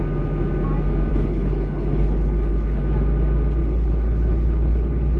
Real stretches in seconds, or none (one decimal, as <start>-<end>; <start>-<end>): 0.0-1.1; 2.8-3.6